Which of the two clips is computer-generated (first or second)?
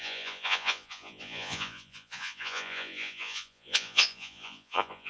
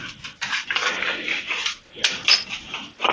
first